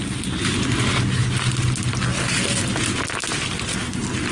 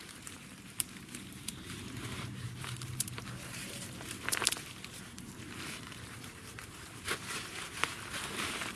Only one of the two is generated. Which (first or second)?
second